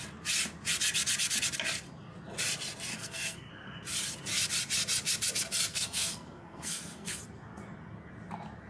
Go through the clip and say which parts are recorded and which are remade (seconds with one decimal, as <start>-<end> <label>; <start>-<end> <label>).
0.0-2.9 recorded; 2.9-3.5 remade; 3.5-5.7 recorded; 5.7-7.2 remade; 7.2-8.7 recorded